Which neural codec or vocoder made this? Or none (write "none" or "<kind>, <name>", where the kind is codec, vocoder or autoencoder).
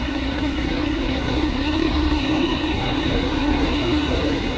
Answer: codec, SNAC